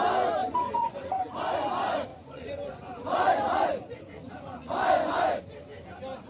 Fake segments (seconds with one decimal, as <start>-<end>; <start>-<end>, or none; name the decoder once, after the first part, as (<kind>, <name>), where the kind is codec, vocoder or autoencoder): 0.4-1.2 (vocoder, Vocos); 2.1-5.4